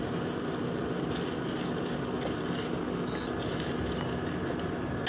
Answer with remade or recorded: recorded